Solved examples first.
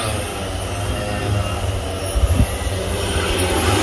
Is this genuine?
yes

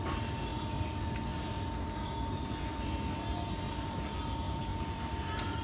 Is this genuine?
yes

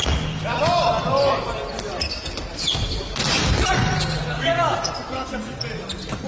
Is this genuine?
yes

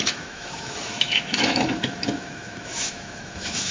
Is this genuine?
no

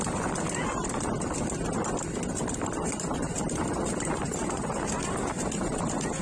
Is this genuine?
yes